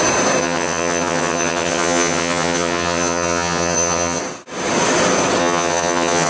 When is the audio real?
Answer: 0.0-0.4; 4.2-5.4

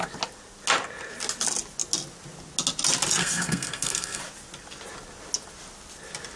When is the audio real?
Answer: 0.0-3.2; 4.2-6.4

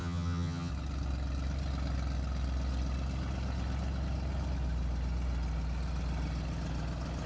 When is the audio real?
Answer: 0.7-7.3

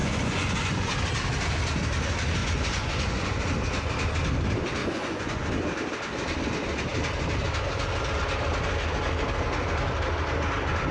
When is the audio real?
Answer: 0.9-2.4; 3.4-4.8; 5.5-10.9

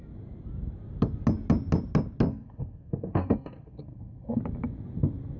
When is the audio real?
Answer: 0.0-2.3; 4.4-5.4